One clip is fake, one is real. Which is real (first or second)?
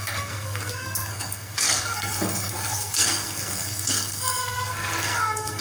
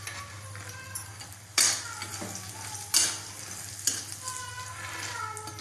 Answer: second